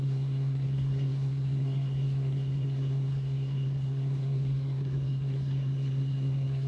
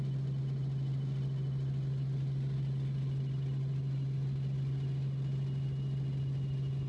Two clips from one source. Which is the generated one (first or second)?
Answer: first